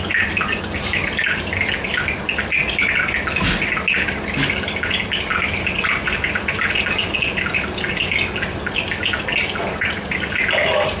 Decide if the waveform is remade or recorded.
recorded